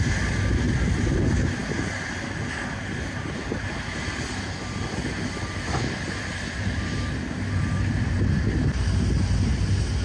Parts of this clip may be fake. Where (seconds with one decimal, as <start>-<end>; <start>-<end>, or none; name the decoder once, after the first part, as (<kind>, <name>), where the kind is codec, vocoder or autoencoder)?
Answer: none